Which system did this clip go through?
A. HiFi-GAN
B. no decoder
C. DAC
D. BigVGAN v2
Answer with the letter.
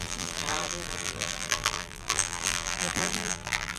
D